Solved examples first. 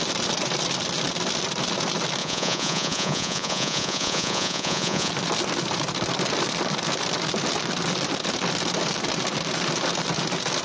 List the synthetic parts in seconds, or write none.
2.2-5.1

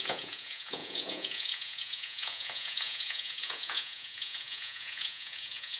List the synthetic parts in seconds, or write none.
0.0-5.8

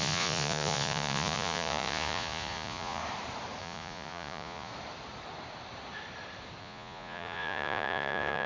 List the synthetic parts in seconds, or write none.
0.0-3.0; 3.6-4.7; 6.6-8.5

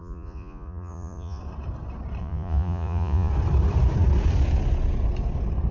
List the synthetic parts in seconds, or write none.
0.0-1.4; 2.2-3.3

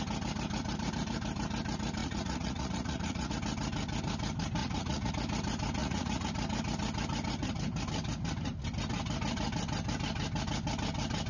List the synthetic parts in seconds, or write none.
2.0-3.3; 4.6-5.1; 5.8-6.3

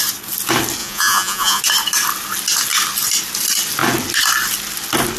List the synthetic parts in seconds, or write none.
0.8-1.6

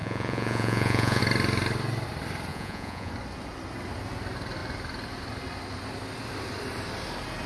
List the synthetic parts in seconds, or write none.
0.0-1.2; 2.5-3.1

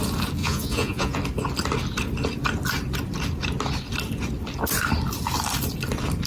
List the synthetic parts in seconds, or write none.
0.4-1.2